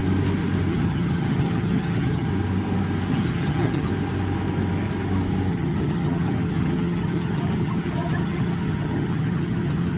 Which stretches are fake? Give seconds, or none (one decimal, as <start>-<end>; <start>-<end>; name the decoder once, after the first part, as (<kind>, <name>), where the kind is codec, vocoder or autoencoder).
0.7-2.3 (vocoder, HiFi-GAN); 3.1-3.9; 5.5-10.0